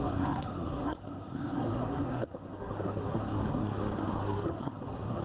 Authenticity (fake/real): fake